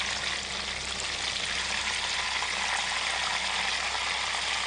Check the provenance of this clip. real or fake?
real